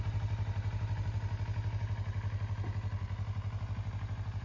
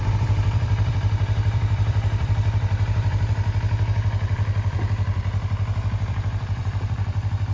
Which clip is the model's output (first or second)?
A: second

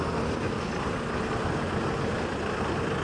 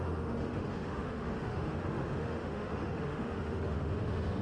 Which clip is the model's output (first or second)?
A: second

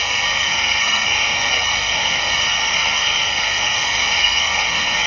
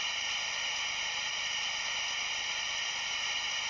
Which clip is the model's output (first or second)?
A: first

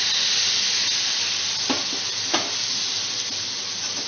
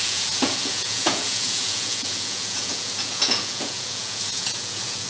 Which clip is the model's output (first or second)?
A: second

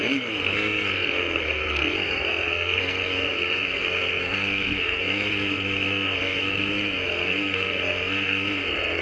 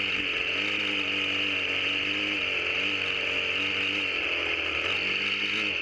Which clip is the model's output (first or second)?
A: first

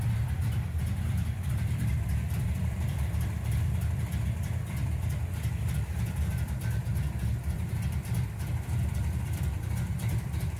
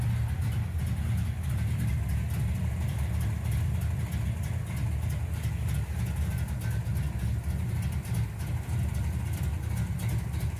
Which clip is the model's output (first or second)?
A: first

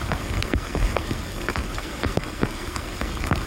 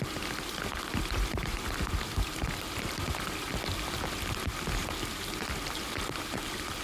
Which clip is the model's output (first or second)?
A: first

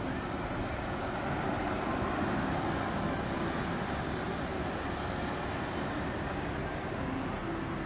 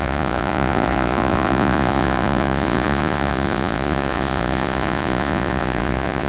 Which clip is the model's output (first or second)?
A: second